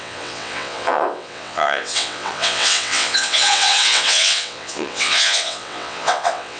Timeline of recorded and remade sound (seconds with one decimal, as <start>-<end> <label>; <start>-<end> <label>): 0.0-6.6 remade